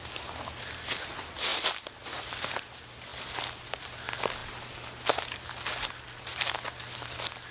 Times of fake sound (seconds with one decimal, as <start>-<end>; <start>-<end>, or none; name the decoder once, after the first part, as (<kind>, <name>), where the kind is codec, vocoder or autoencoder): none